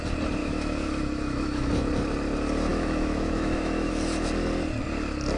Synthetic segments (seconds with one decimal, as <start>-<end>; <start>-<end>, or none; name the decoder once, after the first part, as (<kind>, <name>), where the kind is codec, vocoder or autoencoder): 0.4-1.7 (autoencoder, DAC-VAE); 2.7-3.9